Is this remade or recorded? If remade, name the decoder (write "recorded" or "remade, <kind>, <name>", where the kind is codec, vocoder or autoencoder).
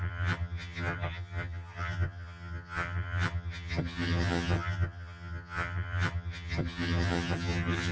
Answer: remade, vocoder, HiFi-GAN